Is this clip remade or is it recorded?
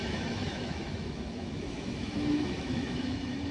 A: remade